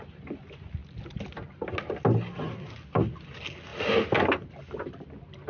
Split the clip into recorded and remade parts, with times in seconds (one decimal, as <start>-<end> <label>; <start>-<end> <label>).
0.0-5.5 recorded